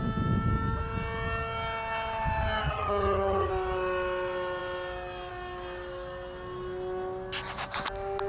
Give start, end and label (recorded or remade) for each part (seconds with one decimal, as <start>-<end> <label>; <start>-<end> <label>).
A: 0.0-2.6 recorded; 2.6-3.5 remade; 3.5-8.3 recorded